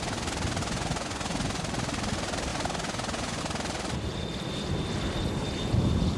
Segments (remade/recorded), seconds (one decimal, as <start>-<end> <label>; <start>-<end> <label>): 0.0-0.6 recorded; 0.6-1.6 remade; 1.6-2.5 recorded; 2.5-3.4 remade; 3.4-6.2 recorded